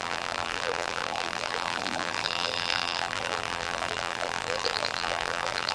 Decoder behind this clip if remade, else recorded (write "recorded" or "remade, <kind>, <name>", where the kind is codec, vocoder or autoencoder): remade, vocoder, BigVGAN v2